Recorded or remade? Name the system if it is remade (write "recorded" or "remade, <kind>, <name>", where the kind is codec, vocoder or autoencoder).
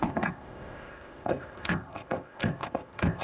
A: remade, codec, ZipCodec